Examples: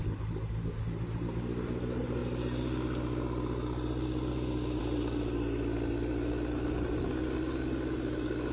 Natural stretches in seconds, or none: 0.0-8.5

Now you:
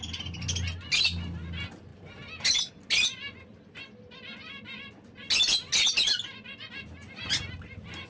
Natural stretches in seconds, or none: 0.0-8.1

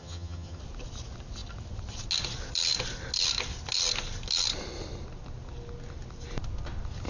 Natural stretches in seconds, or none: 0.6-7.1

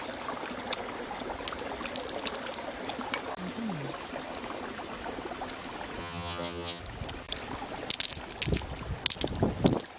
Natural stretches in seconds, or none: 0.0-6.0; 6.8-10.0

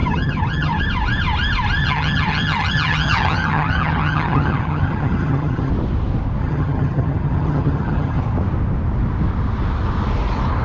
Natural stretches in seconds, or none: 0.8-1.8; 5.7-6.4; 8.2-10.6

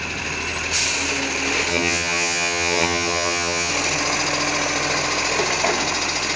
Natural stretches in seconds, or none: 0.0-1.7; 3.7-6.4